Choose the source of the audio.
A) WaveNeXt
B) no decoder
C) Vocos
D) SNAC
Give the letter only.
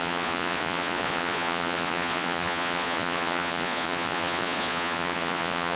C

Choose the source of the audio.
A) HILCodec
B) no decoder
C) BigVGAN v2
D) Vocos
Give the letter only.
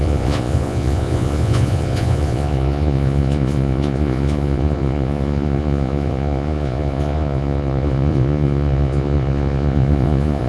D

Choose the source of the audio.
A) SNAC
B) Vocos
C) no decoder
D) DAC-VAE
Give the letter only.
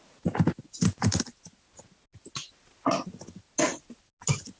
C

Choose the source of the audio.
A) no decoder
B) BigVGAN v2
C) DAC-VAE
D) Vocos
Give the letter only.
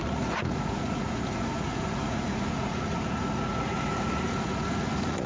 D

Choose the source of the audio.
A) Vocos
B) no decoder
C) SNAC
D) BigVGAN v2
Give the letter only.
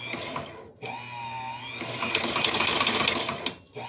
B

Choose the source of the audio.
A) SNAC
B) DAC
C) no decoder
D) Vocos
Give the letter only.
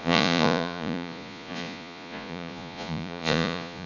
D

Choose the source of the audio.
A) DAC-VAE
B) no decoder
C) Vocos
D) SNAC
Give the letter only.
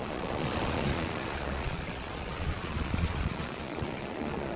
C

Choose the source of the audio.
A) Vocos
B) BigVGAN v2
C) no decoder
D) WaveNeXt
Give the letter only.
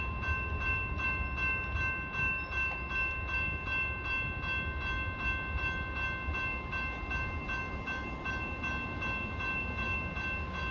C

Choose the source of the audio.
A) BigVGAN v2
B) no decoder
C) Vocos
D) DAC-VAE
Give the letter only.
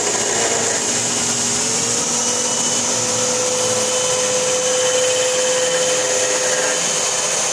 B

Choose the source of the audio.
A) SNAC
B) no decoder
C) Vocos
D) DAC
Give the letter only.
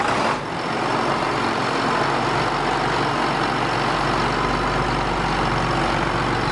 B